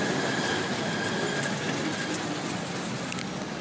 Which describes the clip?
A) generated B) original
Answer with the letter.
B